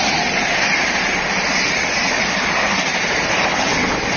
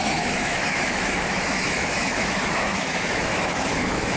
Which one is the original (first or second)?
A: first